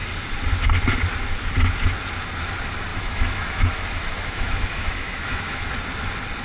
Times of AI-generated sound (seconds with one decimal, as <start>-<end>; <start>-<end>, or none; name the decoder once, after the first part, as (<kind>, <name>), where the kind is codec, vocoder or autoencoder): 2.9-5.7 (autoencoder, DAC-VAE)